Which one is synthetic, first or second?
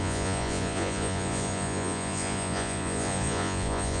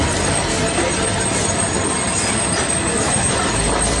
first